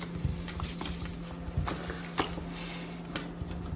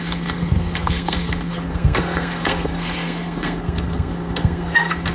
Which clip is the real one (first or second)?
first